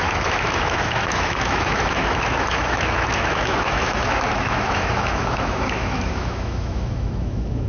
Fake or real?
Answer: fake